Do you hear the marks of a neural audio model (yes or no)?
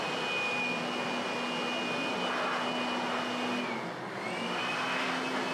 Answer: no